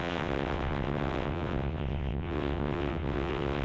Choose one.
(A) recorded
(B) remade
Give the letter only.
B